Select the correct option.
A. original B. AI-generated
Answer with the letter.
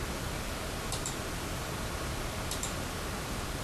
A